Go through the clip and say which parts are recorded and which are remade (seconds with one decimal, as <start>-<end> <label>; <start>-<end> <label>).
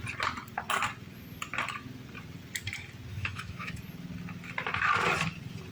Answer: 0.0-3.1 recorded; 3.1-3.7 remade; 3.7-5.7 recorded